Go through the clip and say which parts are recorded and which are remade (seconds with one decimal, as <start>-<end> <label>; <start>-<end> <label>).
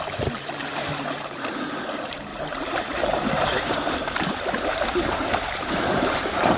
0.0-0.7 recorded; 0.7-1.6 remade; 1.6-2.3 recorded; 2.3-6.6 remade